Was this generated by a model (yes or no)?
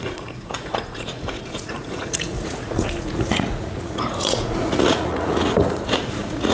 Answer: yes